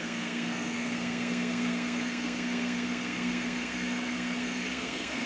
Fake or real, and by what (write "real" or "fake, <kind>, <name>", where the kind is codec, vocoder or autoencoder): fake, codec, SNAC